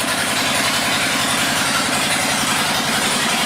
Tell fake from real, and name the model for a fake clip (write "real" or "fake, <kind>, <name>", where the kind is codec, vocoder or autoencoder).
fake, vocoder, BigVGAN v2